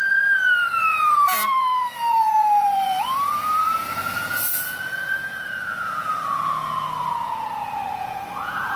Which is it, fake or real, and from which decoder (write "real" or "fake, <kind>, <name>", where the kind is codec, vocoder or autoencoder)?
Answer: fake, vocoder, Vocos